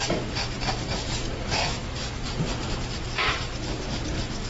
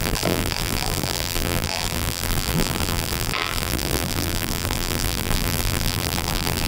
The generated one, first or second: second